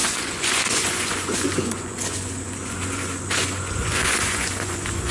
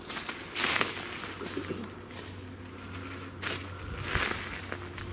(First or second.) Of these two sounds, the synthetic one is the first